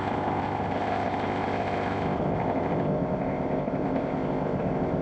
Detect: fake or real fake